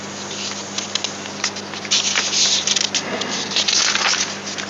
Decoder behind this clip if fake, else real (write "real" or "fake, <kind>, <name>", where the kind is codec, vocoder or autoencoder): real